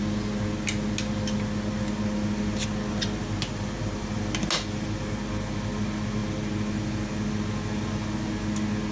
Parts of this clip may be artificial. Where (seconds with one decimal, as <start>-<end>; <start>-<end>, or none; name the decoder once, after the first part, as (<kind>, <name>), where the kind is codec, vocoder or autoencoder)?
none